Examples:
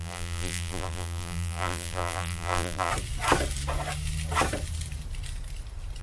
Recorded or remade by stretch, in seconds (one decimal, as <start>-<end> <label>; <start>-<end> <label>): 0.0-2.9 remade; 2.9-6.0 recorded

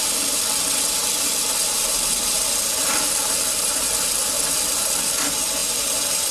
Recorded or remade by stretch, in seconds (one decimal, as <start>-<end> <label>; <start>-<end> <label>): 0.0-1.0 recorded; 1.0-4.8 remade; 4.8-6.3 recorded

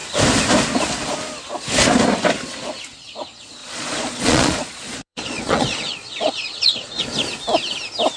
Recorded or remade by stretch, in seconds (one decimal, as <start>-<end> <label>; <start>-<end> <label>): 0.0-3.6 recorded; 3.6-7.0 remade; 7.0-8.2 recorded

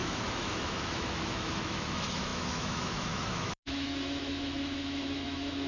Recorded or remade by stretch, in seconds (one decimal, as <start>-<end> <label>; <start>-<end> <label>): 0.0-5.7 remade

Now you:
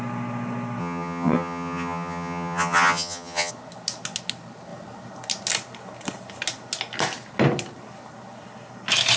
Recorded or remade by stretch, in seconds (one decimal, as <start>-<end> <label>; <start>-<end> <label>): 0.0-0.8 recorded; 0.8-3.5 remade; 3.5-9.2 recorded

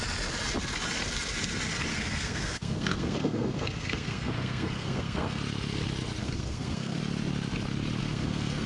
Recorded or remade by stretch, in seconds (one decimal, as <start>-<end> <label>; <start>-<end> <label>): 0.0-1.9 recorded; 1.9-5.4 remade; 5.4-6.2 recorded; 6.2-7.0 remade; 7.0-8.0 recorded; 8.0-8.7 remade